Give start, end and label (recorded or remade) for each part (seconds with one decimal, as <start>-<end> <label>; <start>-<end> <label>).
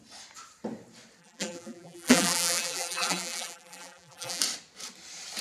0.0-1.2 recorded; 1.2-4.4 remade; 4.4-5.4 recorded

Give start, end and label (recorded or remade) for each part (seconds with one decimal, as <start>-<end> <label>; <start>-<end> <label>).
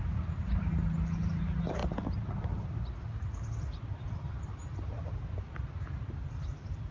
0.0-6.9 recorded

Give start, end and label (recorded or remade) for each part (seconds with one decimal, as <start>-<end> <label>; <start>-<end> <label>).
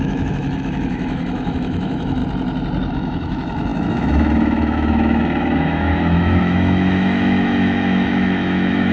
0.0-2.2 remade; 2.2-2.9 recorded; 2.9-8.9 remade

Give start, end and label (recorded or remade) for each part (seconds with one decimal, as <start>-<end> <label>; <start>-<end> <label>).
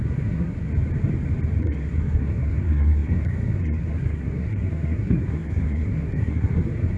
0.0-0.7 remade; 0.7-1.6 recorded; 1.6-7.0 remade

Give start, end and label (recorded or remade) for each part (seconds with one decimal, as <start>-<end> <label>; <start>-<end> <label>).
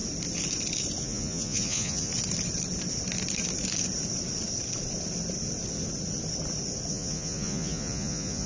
0.0-1.0 recorded; 1.0-2.1 remade; 2.1-6.9 recorded; 6.9-8.5 remade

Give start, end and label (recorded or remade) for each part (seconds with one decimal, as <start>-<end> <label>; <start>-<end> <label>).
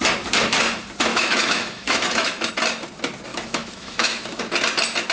0.0-1.1 recorded; 1.1-2.5 remade; 2.5-3.3 recorded; 3.3-4.4 remade; 4.4-5.1 recorded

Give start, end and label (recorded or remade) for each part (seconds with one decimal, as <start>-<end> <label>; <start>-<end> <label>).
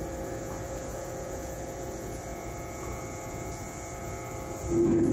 0.0-5.1 remade